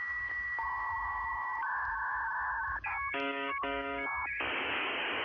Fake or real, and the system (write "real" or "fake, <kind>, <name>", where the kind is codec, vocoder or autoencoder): fake, codec, DAC